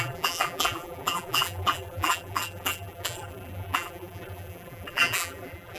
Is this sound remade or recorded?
remade